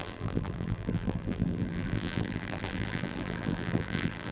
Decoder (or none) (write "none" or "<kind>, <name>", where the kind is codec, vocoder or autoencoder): vocoder, BigVGAN v2